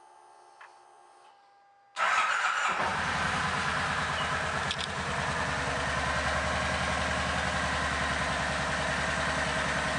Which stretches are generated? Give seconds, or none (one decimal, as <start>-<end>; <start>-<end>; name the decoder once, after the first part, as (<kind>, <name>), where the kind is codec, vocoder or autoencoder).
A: 2.9-5.4 (vocoder, BigVGAN v2)